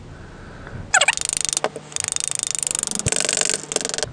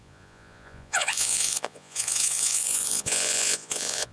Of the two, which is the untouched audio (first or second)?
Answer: first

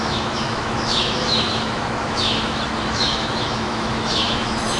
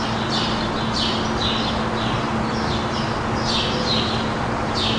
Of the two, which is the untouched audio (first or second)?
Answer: second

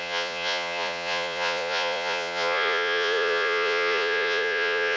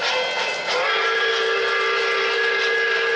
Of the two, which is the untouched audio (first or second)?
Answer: second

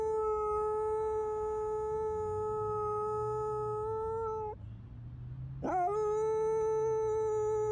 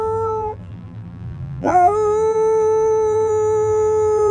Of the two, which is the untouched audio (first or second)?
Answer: first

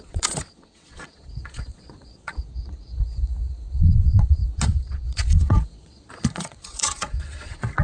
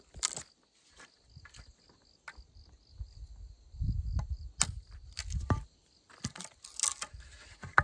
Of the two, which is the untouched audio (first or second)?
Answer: second